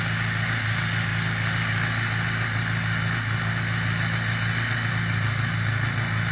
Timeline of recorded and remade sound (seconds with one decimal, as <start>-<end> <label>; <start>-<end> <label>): 0.0-6.3 recorded